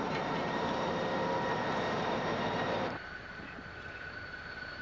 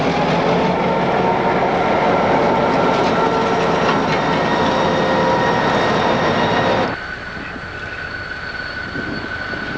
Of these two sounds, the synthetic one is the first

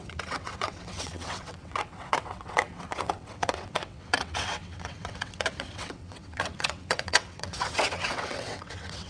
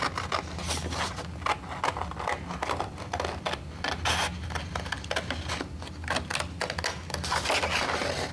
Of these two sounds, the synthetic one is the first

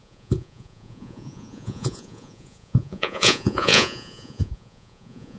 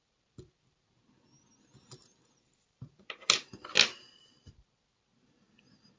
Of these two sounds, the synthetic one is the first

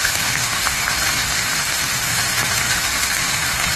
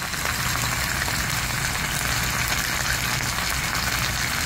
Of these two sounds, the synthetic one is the first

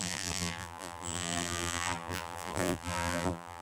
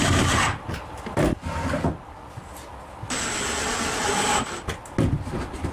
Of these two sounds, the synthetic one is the first